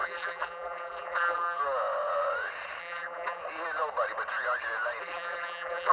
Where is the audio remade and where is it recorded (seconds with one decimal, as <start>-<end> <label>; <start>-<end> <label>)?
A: 0.0-1.6 remade; 1.6-2.8 recorded; 2.8-3.4 remade; 3.4-5.0 recorded; 5.0-5.9 remade